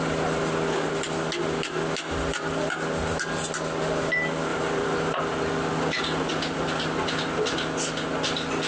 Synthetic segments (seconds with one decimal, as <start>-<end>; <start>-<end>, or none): 4.5-5.2